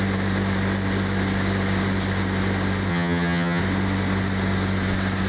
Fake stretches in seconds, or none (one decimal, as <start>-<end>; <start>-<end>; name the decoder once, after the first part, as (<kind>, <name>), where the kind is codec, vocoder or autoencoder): 2.9-3.6 (vocoder, HiFi-GAN)